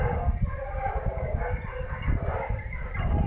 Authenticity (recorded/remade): recorded